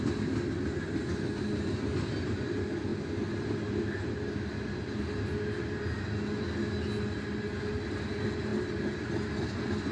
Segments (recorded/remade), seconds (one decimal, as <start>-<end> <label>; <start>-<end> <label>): 0.0-9.9 recorded